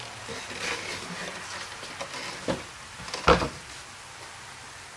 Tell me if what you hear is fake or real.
real